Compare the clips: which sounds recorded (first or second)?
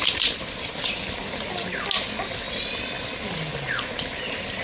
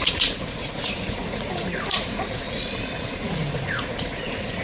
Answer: first